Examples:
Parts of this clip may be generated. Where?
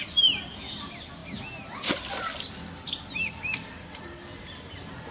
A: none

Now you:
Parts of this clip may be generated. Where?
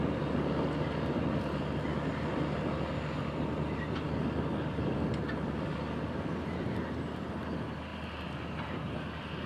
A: none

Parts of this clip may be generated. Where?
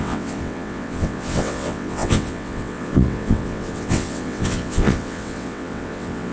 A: 0.0-6.3 (vocoder, WaveNeXt)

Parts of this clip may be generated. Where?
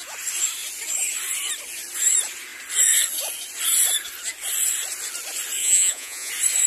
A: 5.6-6.3 (vocoder, Vocos)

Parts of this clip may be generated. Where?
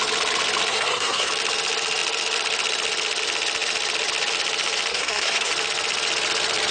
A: 0.7-1.3 (codec, SNAC); 4.9-5.5